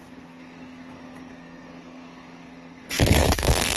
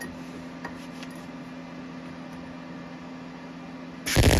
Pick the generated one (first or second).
first